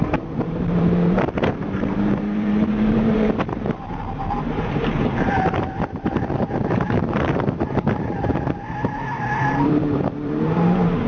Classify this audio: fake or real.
fake